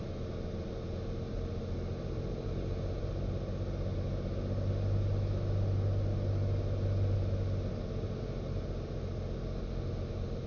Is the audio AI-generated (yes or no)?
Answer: no